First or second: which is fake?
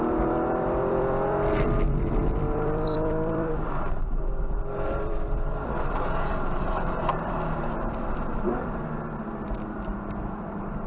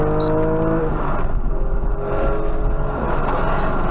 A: first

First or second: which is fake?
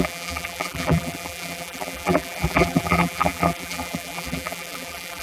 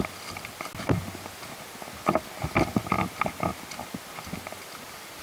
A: first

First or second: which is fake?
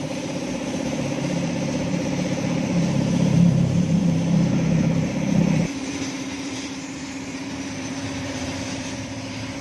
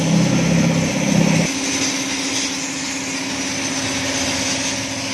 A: first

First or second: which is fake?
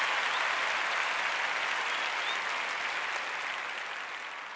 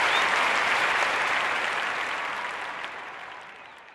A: second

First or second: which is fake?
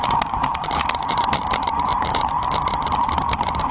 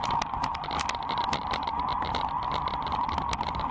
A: first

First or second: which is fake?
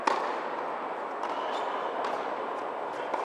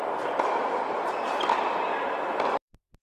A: second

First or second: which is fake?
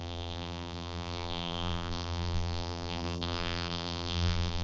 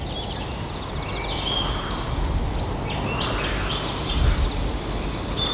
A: first